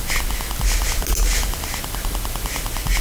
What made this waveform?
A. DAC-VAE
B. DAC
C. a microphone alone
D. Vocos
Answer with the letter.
C